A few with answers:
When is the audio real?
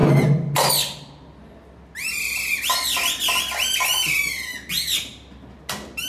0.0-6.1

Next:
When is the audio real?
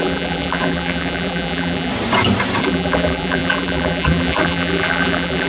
1.9-2.6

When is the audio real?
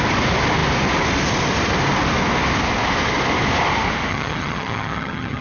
0.0-4.1